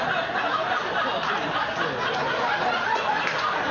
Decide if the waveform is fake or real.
real